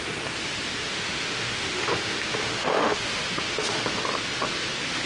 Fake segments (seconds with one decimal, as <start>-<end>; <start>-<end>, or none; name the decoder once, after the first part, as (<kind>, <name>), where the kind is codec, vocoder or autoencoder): 0.9-4.0 (autoencoder, DAC-VAE)